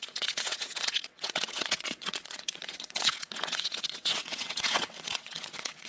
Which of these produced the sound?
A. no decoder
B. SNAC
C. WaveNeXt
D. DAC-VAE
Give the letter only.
C